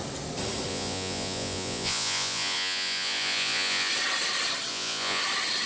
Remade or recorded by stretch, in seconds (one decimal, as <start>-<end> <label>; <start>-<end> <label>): 0.0-0.7 recorded; 0.7-3.9 remade; 3.9-4.7 recorded; 4.7-5.2 remade; 5.2-5.7 recorded